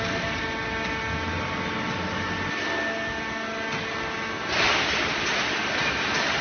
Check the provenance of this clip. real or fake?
real